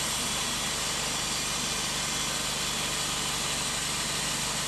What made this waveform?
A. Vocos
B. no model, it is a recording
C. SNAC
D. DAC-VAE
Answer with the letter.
B